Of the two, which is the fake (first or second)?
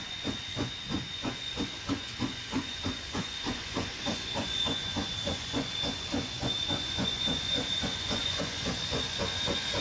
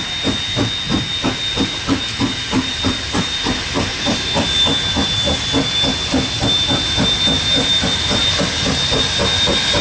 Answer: first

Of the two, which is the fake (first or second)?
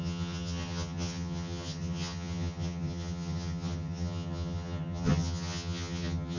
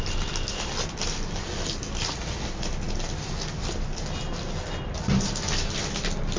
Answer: first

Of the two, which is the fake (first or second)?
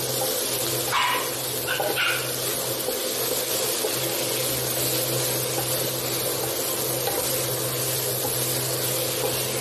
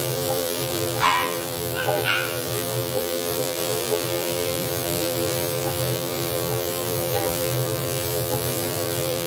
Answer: second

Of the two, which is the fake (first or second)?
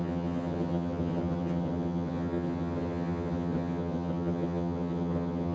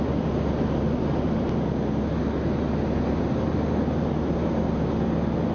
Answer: first